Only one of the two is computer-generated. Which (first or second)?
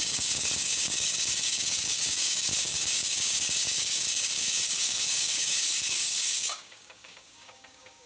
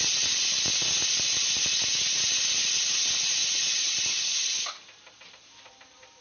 first